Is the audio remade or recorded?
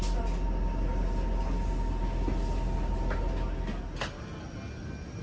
recorded